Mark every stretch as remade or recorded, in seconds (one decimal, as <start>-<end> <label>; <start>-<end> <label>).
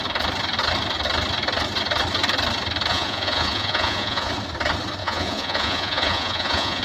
0.0-2.9 recorded; 2.9-4.3 remade; 4.3-5.0 recorded; 5.0-6.8 remade